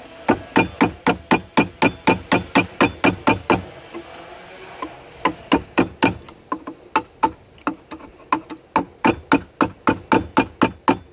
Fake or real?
real